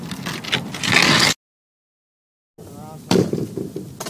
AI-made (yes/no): no